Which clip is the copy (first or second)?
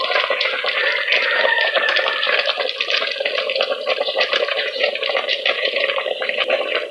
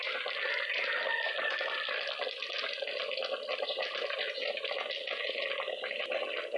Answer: first